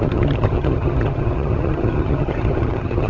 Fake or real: fake